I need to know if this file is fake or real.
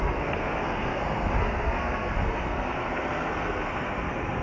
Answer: fake